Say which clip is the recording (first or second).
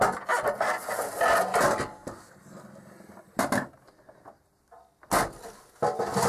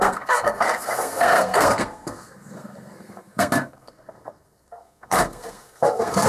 first